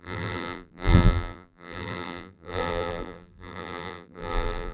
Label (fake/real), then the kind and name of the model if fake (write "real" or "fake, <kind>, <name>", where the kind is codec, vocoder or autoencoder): fake, vocoder, BigVGAN v2